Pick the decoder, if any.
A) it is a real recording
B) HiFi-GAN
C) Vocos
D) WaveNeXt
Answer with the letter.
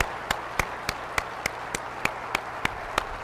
A